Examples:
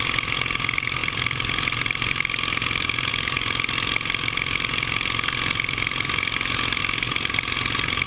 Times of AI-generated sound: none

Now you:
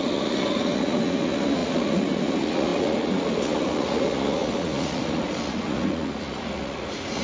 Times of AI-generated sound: 0.0-7.2 (vocoder, Vocos)

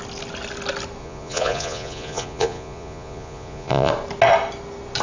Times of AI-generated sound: 1.0-3.9 (vocoder, Vocos)